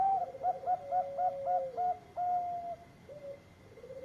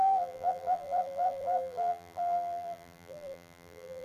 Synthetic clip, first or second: second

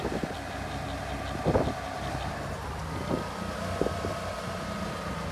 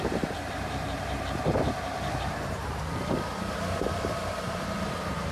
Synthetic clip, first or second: second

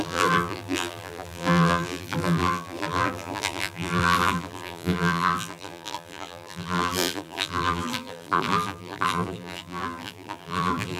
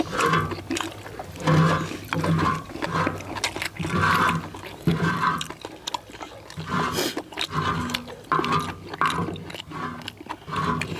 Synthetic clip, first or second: first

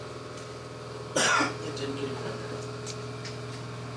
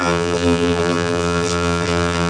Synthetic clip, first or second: second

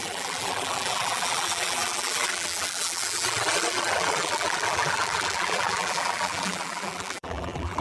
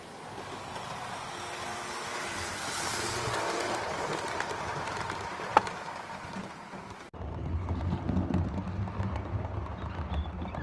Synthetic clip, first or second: first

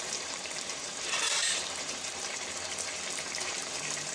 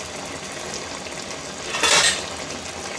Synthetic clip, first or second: first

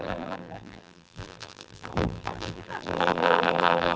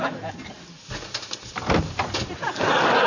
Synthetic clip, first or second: first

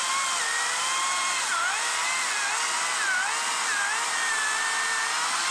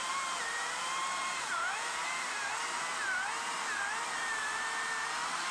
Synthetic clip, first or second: second